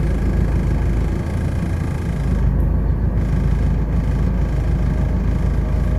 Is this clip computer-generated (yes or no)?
no